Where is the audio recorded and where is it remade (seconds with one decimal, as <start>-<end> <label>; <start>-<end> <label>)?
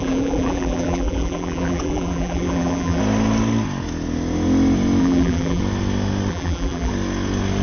0.0-3.0 remade; 3.0-5.0 recorded; 5.0-5.6 remade; 5.6-6.3 recorded; 6.3-6.9 remade; 6.9-7.6 recorded